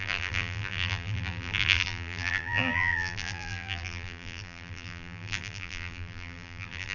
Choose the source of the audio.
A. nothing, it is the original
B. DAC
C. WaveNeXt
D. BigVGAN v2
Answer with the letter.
D